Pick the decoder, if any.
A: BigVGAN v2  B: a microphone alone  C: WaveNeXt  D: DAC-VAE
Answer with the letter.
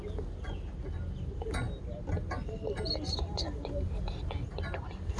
B